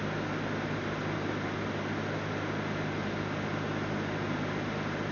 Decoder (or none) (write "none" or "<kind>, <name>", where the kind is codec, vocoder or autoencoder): none